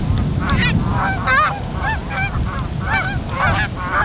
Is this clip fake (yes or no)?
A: no